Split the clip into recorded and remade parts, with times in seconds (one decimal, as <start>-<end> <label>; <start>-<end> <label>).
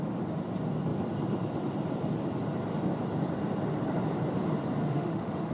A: 0.0-4.8 recorded; 4.8-5.5 remade